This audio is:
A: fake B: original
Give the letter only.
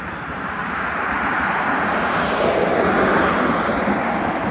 B